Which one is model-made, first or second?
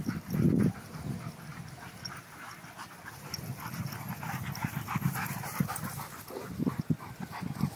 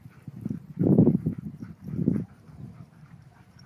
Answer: second